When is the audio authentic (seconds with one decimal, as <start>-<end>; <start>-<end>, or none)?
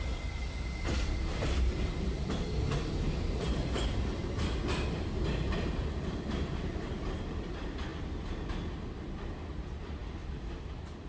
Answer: 0.0-11.1